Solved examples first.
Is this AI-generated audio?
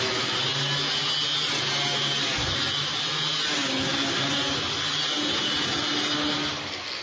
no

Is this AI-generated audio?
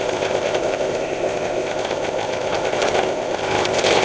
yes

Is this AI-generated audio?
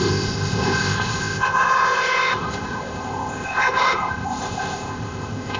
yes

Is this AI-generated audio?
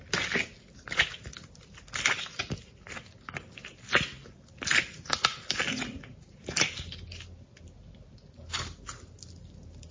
no